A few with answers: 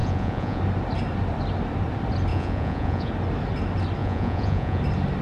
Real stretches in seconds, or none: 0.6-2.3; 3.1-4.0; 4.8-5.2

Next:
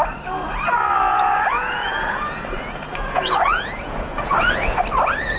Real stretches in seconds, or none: 0.0-1.1; 4.3-5.4

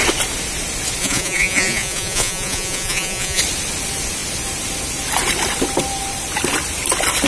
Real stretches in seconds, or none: 0.0-1.0; 3.4-7.3

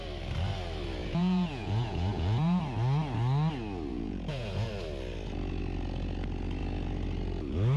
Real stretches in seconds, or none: 0.0-1.0; 2.6-3.9; 4.7-7.8

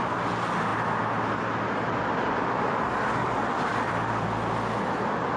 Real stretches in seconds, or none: 0.0-5.4

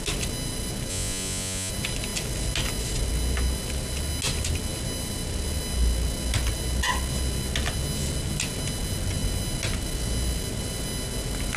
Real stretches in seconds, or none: 0.0-0.9; 1.7-11.6

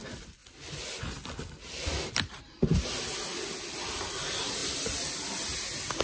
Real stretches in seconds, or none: 0.0-6.0